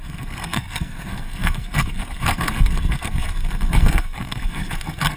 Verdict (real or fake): fake